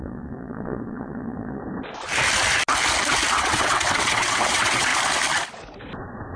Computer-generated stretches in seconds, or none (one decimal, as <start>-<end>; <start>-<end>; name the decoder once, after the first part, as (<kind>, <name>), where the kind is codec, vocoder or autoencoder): 0.0-1.6 (vocoder, WaveNeXt); 3.3-4.9

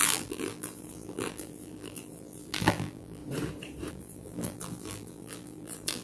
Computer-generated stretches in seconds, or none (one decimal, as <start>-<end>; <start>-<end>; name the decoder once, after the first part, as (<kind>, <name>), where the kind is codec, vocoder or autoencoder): 0.0-3.2 (vocoder, BigVGAN v2); 3.9-6.0